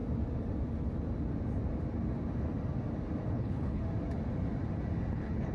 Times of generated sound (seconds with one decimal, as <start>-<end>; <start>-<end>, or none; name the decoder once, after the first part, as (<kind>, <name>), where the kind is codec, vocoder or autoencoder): 3.3-3.8 (codec, HILCodec); 5.1-5.5